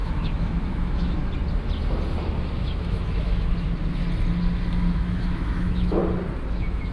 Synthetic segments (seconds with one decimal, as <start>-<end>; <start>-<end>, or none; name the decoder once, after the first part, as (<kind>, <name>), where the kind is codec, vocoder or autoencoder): 0.0-1.2 (autoencoder, DAC-VAE); 2.6-3.5; 4.9-6.0; 6.5-6.9